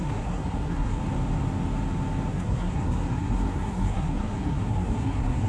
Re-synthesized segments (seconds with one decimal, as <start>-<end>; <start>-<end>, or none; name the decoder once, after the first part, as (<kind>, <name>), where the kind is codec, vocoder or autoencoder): 0.0-1.0 (codec, SNAC); 2.3-5.5